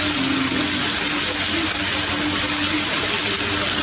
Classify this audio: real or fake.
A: real